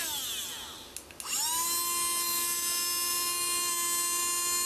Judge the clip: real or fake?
real